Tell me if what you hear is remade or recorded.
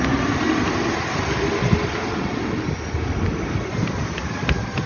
recorded